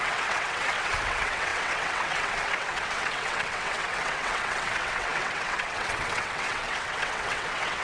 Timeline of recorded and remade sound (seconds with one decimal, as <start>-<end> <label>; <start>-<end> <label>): 0.0-7.8 remade